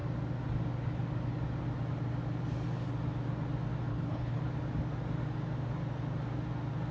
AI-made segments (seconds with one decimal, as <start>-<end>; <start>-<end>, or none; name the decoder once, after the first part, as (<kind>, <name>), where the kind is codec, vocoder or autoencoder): 3.9-4.4 (codec, HILCodec)